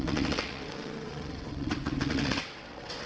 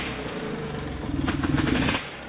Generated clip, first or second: first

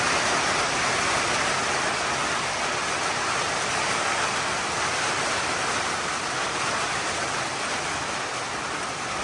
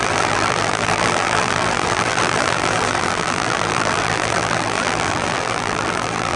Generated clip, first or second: second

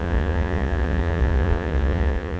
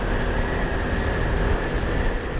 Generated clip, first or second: first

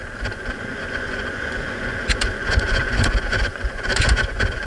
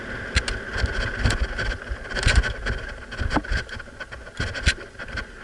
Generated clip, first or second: first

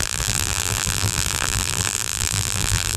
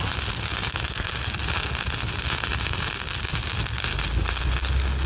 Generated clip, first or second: first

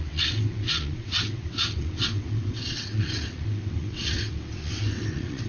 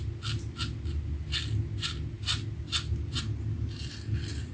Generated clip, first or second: first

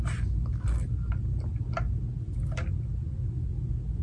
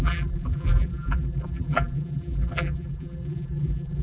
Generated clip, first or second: second